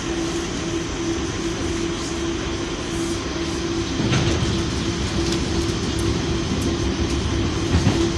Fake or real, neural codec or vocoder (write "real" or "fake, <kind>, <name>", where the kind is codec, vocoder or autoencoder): real